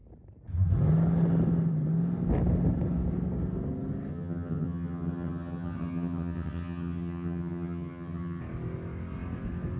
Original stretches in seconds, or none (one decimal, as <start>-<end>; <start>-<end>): 0.0-4.1; 8.4-9.8